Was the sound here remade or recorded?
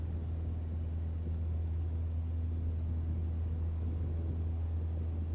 recorded